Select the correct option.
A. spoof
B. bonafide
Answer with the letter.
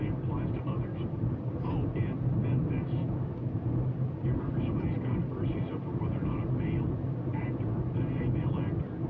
B